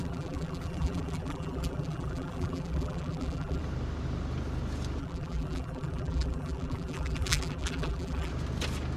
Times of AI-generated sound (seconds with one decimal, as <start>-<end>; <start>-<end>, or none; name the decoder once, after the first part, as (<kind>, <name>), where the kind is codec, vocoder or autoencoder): 0.0-3.6 (vocoder, BigVGAN v2); 5.0-8.3